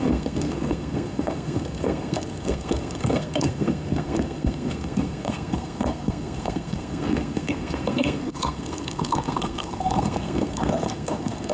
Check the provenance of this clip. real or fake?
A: fake